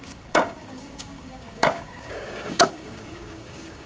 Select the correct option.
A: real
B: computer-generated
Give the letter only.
B